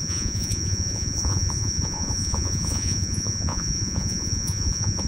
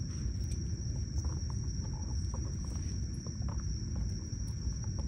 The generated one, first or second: first